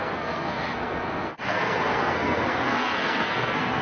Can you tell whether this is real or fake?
fake